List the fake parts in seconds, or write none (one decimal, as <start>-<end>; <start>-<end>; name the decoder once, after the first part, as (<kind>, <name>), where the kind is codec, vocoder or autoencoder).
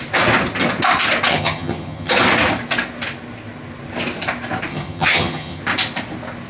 1.3-2.1 (vocoder, HiFi-GAN); 4.7-5.6